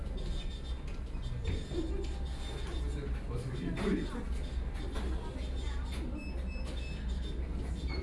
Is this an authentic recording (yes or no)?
yes